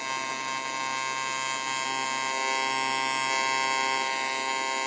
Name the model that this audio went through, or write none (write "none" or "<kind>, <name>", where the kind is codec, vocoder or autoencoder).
none